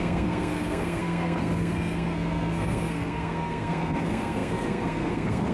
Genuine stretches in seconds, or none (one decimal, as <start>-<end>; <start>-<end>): none